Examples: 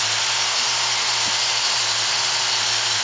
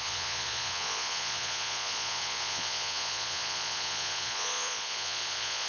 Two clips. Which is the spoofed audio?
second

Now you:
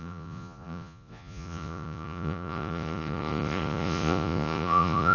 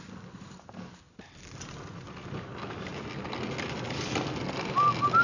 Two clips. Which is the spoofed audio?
first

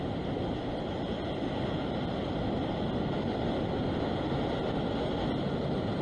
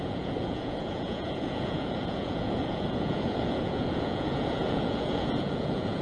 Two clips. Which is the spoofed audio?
second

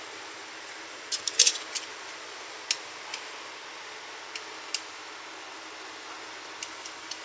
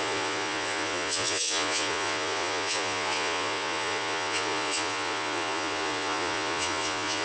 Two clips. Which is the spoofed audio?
second